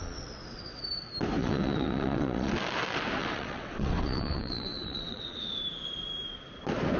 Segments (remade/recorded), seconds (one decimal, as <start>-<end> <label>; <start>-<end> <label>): 0.0-0.8 remade; 0.8-1.4 recorded; 1.4-2.5 remade; 2.5-3.2 recorded; 3.2-5.6 remade; 5.6-7.0 recorded